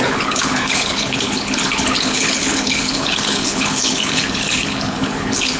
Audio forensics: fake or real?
fake